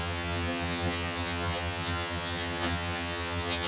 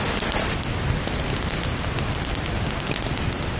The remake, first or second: first